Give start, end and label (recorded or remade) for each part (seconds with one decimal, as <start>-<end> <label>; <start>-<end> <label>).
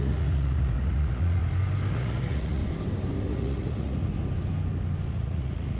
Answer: 0.0-1.4 remade; 1.4-1.9 recorded; 1.9-2.6 remade; 2.6-3.3 recorded; 3.3-4.1 remade; 4.1-5.1 recorded; 5.1-5.8 remade